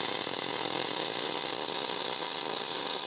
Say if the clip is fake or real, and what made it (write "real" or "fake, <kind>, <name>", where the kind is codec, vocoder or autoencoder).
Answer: real